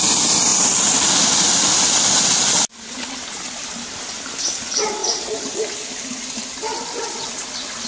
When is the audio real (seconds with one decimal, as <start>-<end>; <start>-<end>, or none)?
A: 0.0-5.0; 6.2-7.9